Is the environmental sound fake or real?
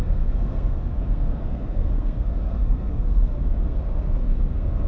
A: fake